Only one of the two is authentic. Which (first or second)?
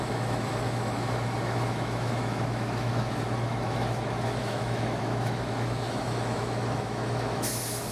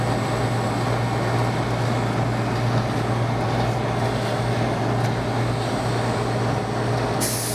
second